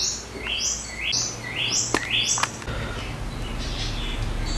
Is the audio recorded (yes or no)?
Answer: yes